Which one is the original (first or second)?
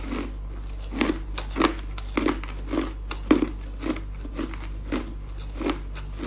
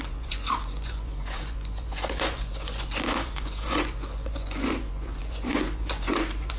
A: first